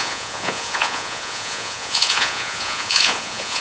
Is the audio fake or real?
fake